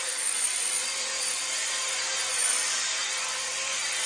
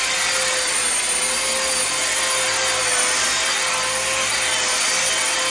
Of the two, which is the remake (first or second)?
first